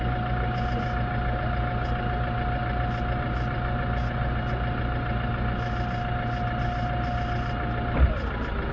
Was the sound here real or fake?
real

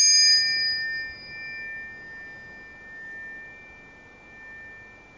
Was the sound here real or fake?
real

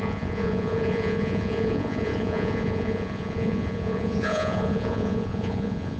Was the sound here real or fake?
fake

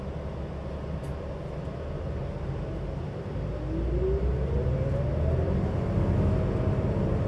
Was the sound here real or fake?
real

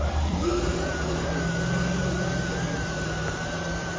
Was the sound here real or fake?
real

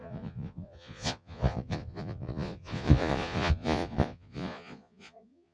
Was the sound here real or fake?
fake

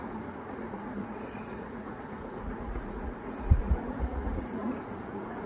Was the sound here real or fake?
fake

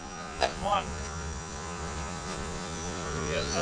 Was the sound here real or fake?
fake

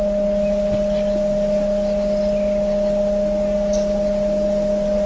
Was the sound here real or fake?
real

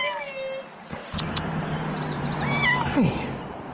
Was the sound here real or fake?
real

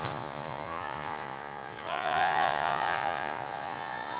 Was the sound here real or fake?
fake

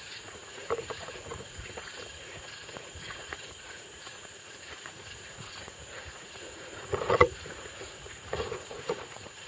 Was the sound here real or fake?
fake